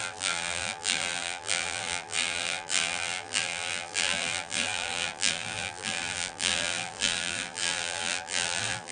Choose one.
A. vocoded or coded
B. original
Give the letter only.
A